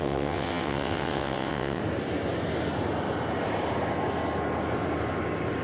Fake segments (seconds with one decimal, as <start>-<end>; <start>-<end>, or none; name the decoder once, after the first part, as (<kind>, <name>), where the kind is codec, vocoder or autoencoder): 0.0-1.8 (vocoder, WaveNeXt)